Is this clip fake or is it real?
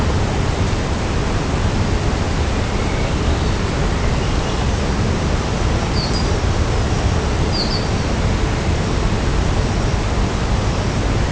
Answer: real